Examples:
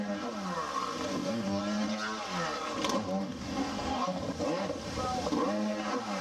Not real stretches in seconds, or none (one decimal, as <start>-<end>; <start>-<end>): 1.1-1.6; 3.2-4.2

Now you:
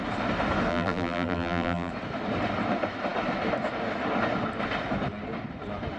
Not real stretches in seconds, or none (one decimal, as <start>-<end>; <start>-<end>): 0.7-1.9

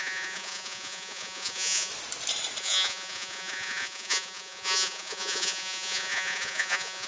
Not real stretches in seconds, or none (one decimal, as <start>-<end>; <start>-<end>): 0.0-1.9; 2.6-7.1

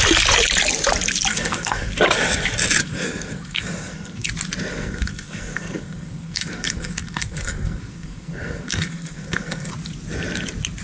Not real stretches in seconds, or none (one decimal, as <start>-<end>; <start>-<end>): 1.3-1.9; 2.8-4.3; 4.7-9.7

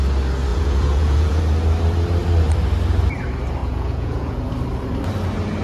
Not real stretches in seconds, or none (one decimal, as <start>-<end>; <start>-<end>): 0.5-1.4; 3.6-4.5

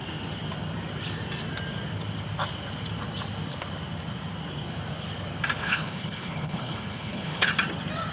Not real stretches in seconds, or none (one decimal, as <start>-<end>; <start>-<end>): 5.6-7.5